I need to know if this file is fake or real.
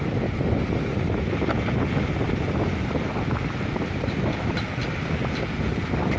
real